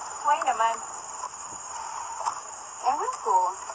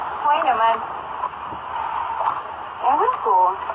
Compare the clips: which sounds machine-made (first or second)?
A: first